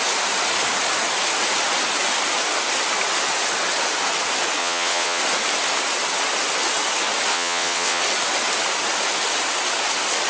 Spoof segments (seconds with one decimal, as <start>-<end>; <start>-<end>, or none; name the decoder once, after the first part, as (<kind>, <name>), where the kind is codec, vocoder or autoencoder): 4.6-5.2 (vocoder, WaveNeXt); 7.3-8.0